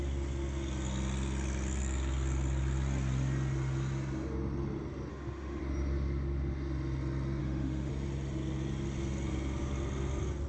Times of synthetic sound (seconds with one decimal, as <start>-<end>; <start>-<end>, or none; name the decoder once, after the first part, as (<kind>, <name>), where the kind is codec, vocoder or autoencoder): 5.1-5.6 (autoencoder, DAC-VAE); 7.4-7.9